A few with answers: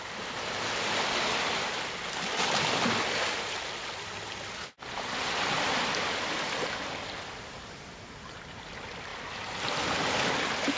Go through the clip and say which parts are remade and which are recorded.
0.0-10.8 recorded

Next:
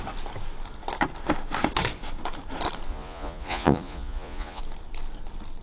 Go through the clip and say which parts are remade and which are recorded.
0.0-2.9 recorded; 2.9-4.6 remade; 4.6-5.6 recorded